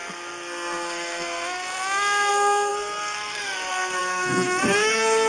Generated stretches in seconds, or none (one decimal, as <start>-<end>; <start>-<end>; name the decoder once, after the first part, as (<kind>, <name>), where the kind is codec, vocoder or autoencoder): 0.0-5.3 (codec, SNAC)

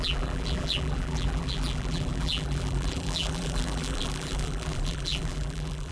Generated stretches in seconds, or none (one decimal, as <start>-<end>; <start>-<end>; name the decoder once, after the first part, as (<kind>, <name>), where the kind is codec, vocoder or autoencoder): 0.0-5.9 (vocoder, BigVGAN v2)

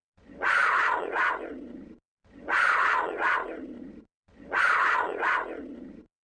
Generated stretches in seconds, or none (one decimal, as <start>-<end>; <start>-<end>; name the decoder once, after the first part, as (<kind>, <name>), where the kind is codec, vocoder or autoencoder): 0.0-6.2 (vocoder, Vocos)

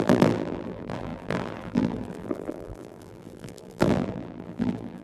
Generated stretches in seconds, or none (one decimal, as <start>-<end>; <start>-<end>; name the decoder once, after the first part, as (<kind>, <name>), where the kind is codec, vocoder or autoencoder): 0.0-5.0 (vocoder, BigVGAN v2)

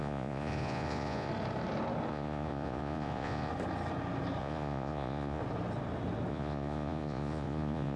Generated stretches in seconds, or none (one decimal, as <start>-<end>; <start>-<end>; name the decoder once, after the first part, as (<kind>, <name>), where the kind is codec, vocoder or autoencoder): 0.0-1.3 (vocoder, Vocos); 2.1-3.5; 4.4-5.4; 6.3-8.0

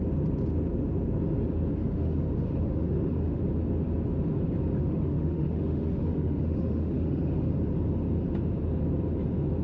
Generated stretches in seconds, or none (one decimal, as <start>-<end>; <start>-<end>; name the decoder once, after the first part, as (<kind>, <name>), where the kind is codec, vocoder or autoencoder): 1.8-3.4 (autoencoder, DAC-VAE); 4.8-7.5